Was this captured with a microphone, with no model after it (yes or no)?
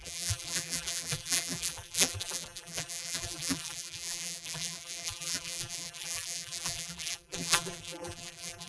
no